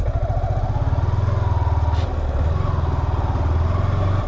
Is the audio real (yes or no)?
yes